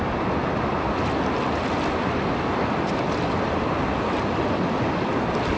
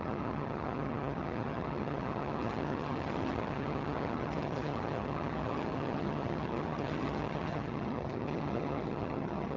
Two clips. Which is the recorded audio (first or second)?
first